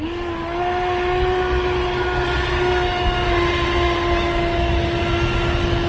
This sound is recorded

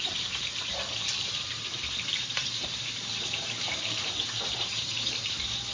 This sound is remade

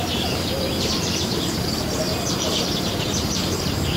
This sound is remade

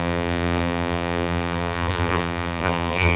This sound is remade